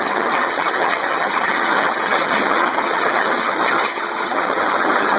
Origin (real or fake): fake